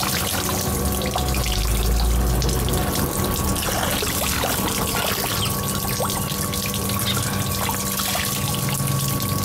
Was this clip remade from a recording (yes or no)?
no